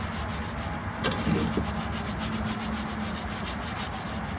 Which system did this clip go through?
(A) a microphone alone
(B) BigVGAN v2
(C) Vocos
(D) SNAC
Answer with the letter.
A